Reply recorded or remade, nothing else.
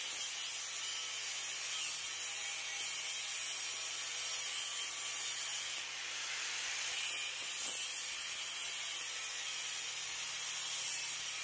remade